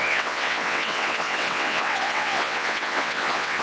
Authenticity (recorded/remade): remade